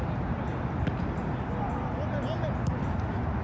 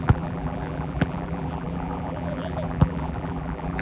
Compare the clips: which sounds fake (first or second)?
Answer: second